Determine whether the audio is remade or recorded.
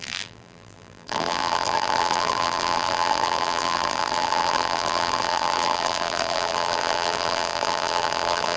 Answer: remade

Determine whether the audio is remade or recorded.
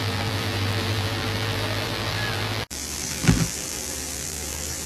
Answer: remade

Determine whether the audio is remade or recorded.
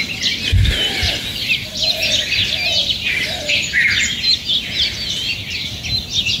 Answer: recorded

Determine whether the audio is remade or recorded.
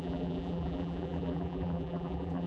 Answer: remade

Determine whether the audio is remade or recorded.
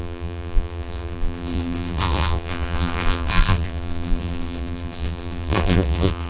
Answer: remade